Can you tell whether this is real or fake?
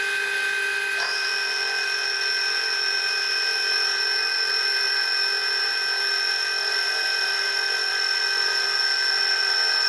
real